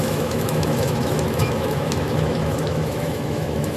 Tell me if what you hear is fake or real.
fake